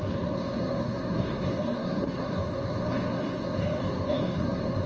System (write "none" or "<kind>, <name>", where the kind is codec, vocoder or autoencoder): codec, SNAC